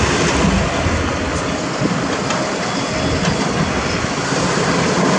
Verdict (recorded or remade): recorded